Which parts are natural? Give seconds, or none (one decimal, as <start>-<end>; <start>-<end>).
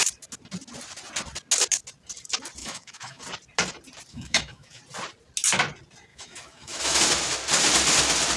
0.0-2.6; 3.2-4.1; 4.8-6.1; 7.0-8.4